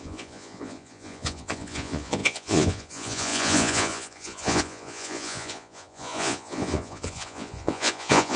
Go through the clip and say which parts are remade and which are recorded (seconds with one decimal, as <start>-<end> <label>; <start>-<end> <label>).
0.0-8.4 remade